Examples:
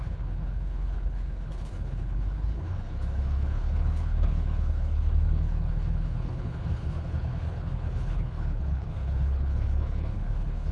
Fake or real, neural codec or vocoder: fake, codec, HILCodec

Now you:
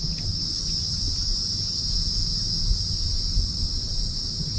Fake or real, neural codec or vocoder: real